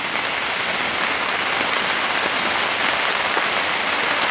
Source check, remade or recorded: recorded